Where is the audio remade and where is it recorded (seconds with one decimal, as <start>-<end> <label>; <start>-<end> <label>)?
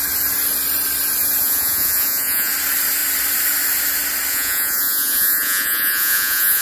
0.0-1.4 recorded; 1.4-2.5 remade; 2.5-4.3 recorded; 4.3-6.6 remade